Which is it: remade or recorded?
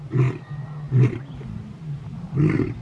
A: recorded